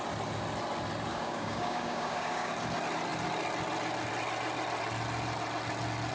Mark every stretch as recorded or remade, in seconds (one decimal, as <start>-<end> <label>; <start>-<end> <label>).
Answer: 0.0-1.1 recorded; 1.1-2.5 remade; 2.5-6.1 recorded